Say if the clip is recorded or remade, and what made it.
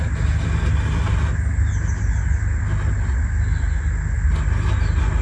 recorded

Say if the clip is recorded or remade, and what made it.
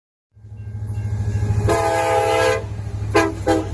recorded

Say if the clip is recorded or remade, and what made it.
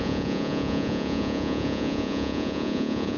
remade, vocoder, Vocos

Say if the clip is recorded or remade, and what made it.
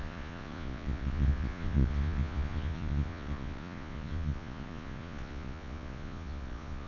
remade, vocoder, Vocos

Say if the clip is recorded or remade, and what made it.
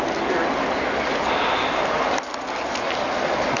recorded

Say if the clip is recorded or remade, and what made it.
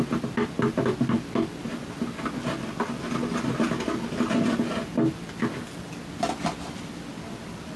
recorded